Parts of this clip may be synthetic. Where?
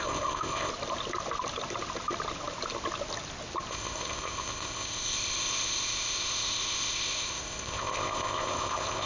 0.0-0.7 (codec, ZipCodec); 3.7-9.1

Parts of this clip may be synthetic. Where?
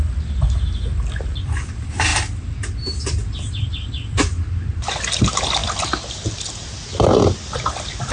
none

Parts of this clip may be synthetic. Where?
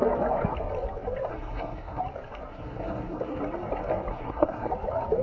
1.3-2.0 (codec, SNAC); 2.5-3.4; 4.1-4.7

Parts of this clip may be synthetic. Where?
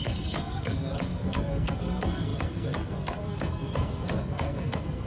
0.0-5.1 (codec, SNAC)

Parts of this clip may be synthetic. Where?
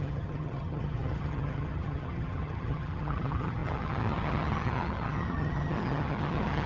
0.0-6.7 (vocoder, HiFi-GAN)